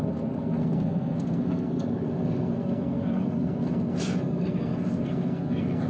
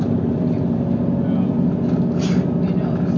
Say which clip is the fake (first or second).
first